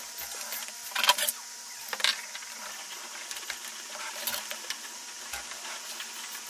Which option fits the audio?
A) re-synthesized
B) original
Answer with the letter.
B